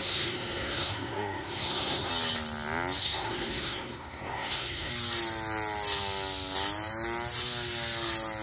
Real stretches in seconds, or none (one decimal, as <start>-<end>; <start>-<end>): 2.1-3.0; 4.9-8.4